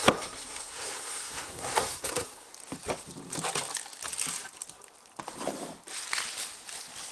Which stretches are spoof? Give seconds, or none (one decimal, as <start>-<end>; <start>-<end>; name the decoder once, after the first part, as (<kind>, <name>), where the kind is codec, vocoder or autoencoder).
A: 0.0-2.5 (codec, SNAC)